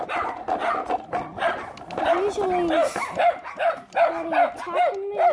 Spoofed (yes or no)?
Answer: no